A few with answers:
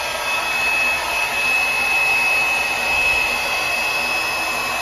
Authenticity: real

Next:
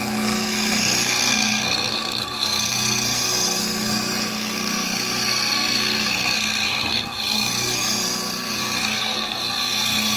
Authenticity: fake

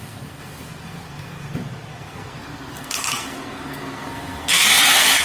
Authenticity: fake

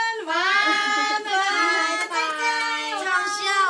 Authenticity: real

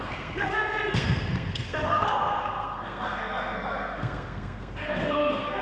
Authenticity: fake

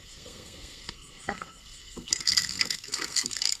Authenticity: fake